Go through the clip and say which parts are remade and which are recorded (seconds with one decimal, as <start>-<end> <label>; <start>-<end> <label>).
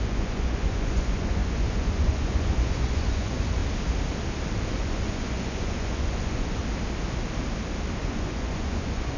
0.0-3.6 remade; 3.6-4.7 recorded; 4.7-6.6 remade; 6.6-8.0 recorded; 8.0-9.2 remade